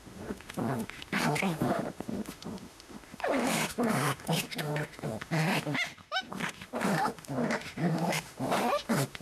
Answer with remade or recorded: remade